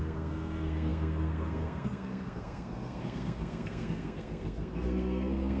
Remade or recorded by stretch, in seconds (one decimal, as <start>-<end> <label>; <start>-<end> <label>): 0.0-5.6 remade